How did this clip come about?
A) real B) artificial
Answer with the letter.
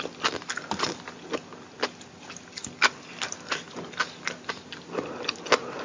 A